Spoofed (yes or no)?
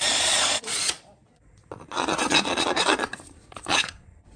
yes